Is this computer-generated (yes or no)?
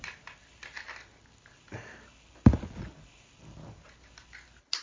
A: no